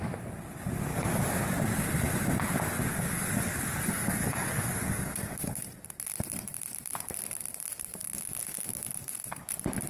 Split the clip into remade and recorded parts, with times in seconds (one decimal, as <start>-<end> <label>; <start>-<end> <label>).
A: 0.0-0.9 recorded; 0.9-1.4 remade; 1.4-2.9 recorded; 2.9-5.6 remade; 5.6-7.9 recorded; 7.9-9.5 remade; 9.5-9.9 recorded